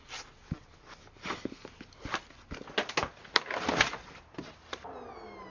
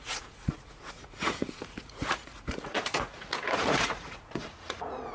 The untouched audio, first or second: first